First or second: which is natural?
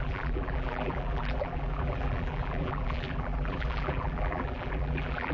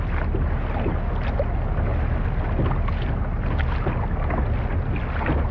second